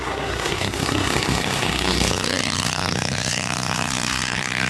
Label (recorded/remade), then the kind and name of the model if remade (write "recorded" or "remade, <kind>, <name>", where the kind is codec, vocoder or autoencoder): remade, codec, SNAC